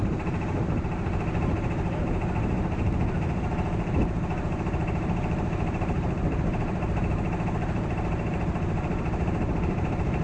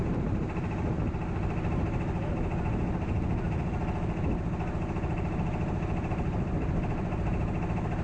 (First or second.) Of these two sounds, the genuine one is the second